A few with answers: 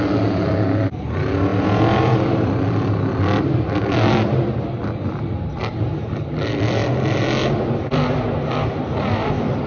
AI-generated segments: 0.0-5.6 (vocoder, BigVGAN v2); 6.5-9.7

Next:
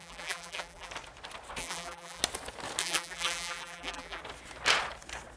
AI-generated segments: 0.0-0.9 (vocoder, BigVGAN v2); 1.6-2.2; 2.8-4.2